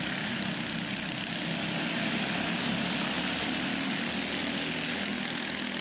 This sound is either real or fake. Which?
real